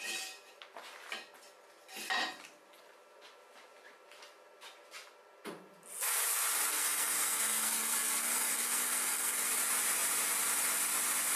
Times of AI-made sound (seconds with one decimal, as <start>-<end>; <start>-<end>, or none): 6.7-9.5